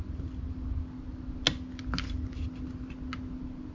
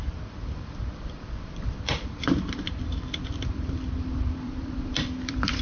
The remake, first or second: second